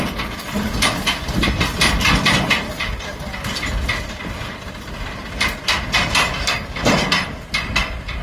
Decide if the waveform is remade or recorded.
recorded